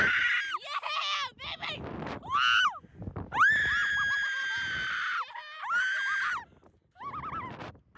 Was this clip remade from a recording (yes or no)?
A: no